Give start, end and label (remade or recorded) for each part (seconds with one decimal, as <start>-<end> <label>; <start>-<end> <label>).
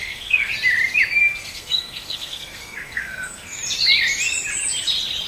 0.0-0.5 remade; 0.5-1.2 recorded; 1.2-3.6 remade; 3.6-5.3 recorded